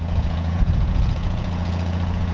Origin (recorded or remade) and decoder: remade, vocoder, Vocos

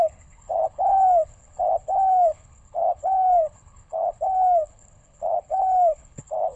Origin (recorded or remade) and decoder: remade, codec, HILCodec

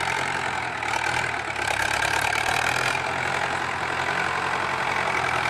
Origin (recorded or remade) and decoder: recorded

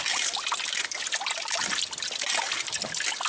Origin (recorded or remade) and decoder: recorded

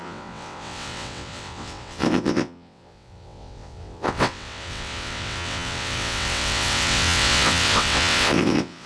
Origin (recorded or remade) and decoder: remade, vocoder, WaveNeXt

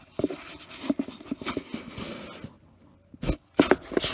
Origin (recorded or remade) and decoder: recorded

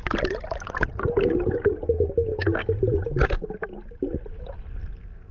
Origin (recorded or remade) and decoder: recorded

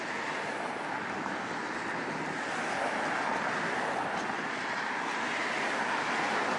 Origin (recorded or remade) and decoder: recorded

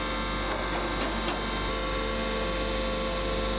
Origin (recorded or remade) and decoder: recorded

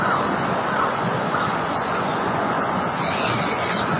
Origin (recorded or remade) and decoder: remade, vocoder, Vocos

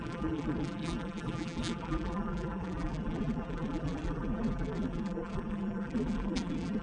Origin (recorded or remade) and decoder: remade, vocoder, BigVGAN v2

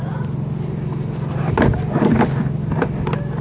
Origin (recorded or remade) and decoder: recorded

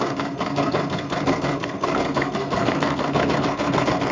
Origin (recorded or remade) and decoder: remade, codec, SNAC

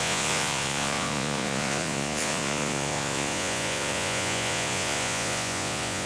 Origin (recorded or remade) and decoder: remade, vocoder, Vocos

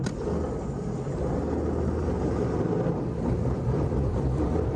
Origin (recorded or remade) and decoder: recorded